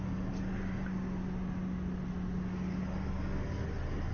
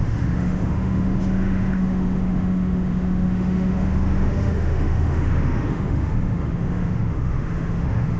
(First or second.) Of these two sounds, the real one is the first